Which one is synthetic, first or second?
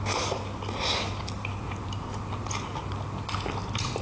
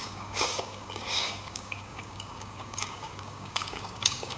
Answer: second